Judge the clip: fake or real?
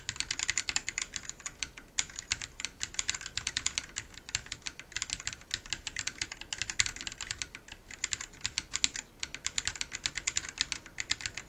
real